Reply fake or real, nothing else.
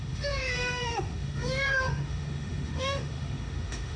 fake